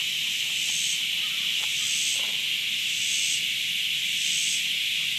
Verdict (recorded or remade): recorded